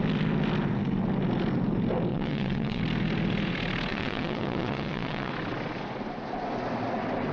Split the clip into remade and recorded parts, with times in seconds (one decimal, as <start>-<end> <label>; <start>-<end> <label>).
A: 0.0-2.1 recorded; 2.1-2.8 remade; 2.8-3.9 recorded; 3.9-5.3 remade; 5.3-7.3 recorded